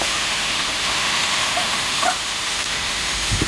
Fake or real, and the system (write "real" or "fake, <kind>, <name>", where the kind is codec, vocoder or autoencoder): fake, autoencoder, DAC-VAE